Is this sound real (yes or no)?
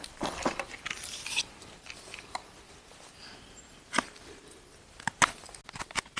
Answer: yes